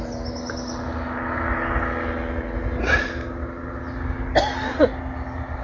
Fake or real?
real